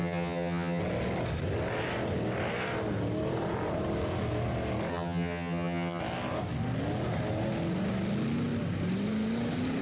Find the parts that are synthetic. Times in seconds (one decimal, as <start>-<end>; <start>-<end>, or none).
0.0-0.8; 4.9-6.0

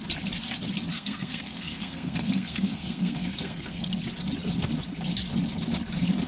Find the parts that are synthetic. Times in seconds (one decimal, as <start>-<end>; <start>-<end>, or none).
0.9-3.9

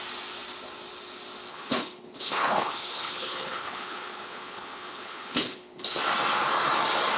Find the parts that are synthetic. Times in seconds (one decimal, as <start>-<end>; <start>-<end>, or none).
1.5-5.8

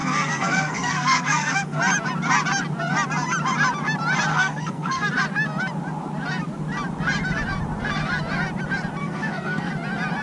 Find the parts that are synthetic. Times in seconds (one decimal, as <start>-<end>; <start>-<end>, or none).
0.0-1.8; 4.3-5.1; 9.0-9.7